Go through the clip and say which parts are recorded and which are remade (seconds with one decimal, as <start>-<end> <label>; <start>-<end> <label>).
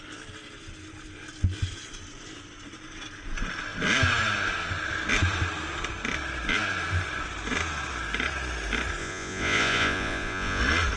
0.0-9.0 recorded; 9.0-10.6 remade; 10.6-11.0 recorded